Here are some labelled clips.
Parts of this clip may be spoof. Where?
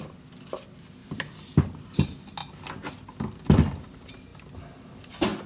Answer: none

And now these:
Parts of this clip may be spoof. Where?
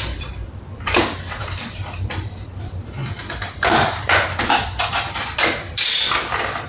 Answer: 0.0-6.7 (vocoder, BigVGAN v2)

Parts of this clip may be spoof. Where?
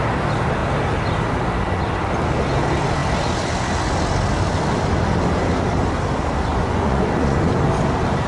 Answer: 6.5-7.5 (vocoder, Vocos)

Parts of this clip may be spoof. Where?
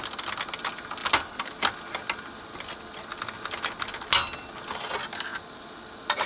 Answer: none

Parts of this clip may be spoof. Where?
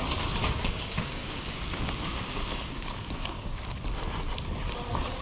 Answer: 0.4-3.5 (codec, DAC)